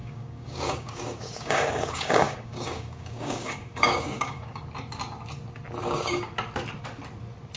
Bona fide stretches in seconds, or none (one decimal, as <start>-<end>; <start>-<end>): 4.6-5.8; 6.3-7.6